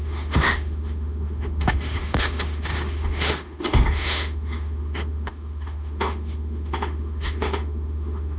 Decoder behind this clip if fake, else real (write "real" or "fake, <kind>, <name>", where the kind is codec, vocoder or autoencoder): fake, autoencoder, DAC-VAE